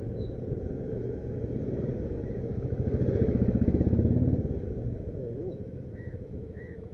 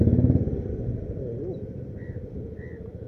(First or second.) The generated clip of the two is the first